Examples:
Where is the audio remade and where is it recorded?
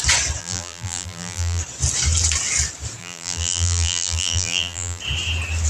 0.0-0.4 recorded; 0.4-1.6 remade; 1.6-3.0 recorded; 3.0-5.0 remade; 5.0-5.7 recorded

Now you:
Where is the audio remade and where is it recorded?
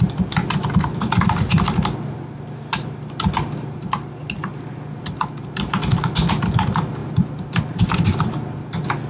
0.0-9.1 recorded